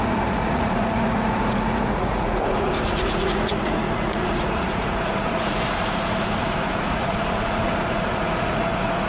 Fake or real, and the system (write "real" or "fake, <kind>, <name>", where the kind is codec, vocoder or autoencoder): fake, vocoder, Vocos